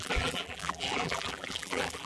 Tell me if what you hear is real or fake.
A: fake